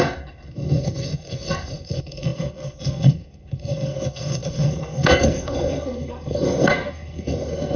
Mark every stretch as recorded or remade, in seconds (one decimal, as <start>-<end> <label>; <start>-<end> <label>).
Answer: 0.0-7.8 remade

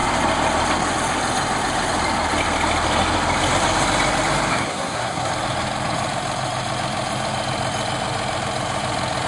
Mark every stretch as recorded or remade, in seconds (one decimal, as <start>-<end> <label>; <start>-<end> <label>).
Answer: 0.0-4.5 recorded; 4.5-5.3 remade; 5.3-9.3 recorded

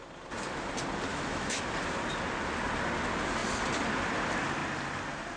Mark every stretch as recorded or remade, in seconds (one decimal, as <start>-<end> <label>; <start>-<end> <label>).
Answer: 0.0-1.1 recorded; 1.1-1.6 remade; 1.6-5.4 recorded

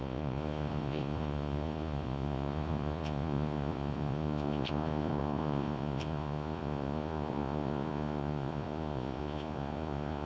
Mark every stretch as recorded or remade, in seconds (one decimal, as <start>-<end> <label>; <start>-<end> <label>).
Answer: 0.0-10.3 remade